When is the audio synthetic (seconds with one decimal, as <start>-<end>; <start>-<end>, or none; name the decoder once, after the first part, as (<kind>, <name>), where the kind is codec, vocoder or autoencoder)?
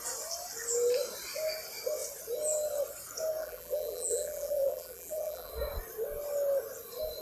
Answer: 3.4-5.5 (vocoder, BigVGAN v2)